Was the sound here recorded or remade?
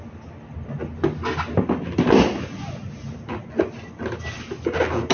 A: recorded